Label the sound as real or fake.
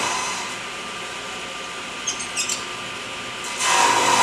real